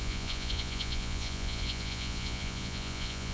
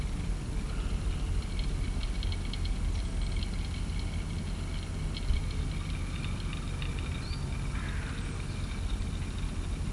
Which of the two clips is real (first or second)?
second